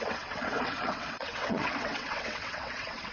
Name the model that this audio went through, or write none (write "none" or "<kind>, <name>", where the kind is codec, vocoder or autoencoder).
vocoder, WaveNeXt